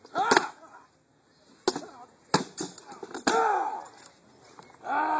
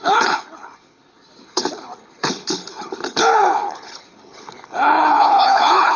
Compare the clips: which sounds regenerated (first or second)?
second